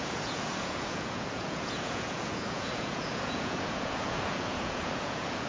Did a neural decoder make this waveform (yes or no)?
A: yes